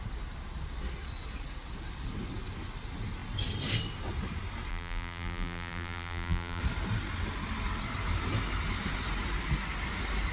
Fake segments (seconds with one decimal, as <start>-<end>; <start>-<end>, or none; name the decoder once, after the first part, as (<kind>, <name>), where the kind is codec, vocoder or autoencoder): 4.7-6.6 (vocoder, BigVGAN v2)